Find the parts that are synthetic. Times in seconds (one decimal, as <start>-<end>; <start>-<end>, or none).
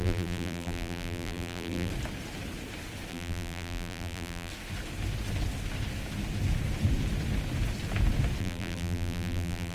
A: 0.0-1.9; 3.1-4.5; 8.4-9.7